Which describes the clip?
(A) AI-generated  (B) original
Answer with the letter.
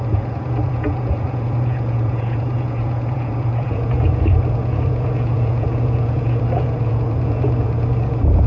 A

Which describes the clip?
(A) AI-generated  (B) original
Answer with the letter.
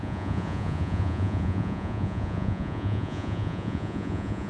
A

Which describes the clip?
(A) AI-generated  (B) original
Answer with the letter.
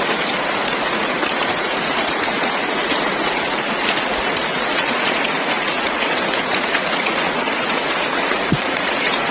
A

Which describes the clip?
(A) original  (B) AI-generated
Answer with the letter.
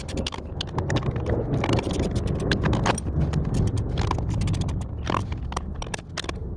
A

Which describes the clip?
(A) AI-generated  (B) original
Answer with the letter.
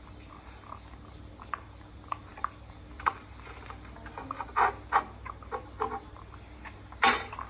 B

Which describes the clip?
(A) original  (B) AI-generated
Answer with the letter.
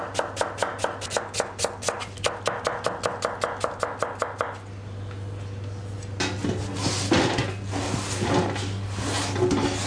A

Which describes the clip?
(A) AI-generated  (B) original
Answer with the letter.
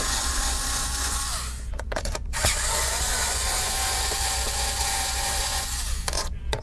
A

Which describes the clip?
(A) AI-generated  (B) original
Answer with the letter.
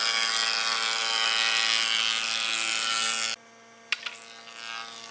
B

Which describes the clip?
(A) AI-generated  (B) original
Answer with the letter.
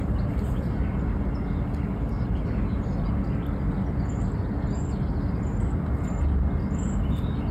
B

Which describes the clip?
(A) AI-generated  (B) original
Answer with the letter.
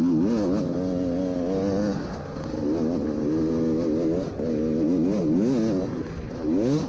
B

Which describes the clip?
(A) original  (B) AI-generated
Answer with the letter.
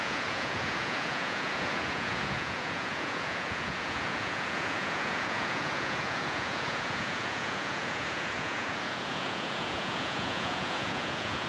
B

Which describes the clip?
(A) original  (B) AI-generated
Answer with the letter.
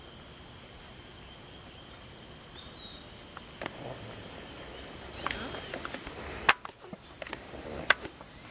A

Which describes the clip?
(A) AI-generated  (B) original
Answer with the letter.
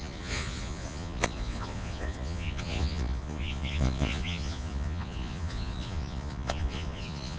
A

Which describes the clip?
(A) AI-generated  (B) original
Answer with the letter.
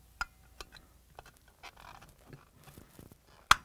B